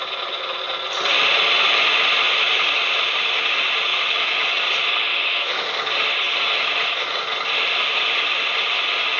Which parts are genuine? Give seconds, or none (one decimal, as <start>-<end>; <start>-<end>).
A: 0.0-3.9; 4.6-5.1; 5.6-9.2